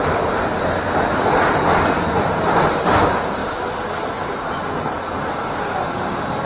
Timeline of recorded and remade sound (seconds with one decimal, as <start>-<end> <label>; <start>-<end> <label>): 0.0-6.5 recorded